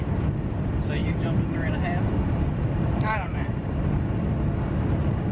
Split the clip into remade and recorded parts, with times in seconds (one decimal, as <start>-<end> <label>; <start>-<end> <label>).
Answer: 0.0-1.0 recorded; 1.0-4.2 remade; 4.2-5.3 recorded